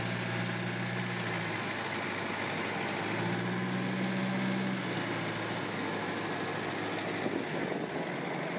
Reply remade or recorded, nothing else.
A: recorded